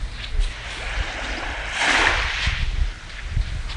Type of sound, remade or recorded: recorded